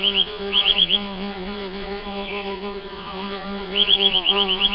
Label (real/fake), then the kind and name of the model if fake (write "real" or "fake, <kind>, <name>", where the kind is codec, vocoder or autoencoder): fake, vocoder, Vocos